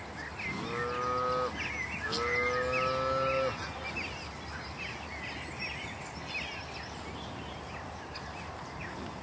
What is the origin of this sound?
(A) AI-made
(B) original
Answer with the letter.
B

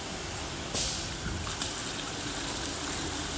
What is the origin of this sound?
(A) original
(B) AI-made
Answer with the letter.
A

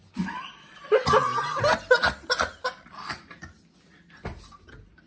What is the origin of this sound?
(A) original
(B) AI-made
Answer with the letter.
A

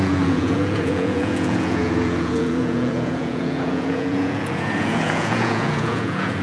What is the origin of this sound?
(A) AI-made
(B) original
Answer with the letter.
A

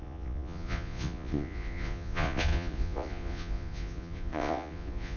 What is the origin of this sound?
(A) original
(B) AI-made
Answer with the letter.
B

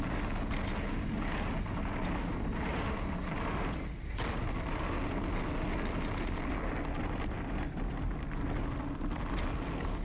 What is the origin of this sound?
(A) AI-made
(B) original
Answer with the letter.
B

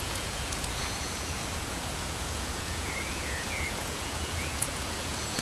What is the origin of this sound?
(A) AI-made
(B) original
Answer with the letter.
A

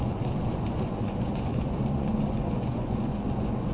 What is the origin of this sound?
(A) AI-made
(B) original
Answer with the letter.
A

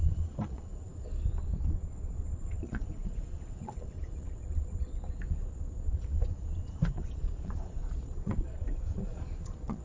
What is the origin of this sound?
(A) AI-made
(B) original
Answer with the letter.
A